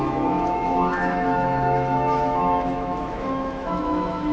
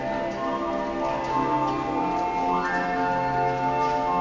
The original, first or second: second